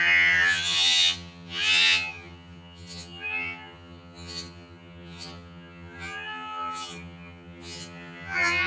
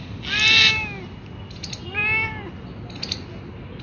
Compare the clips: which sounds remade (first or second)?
first